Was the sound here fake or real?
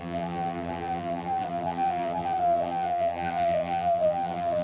fake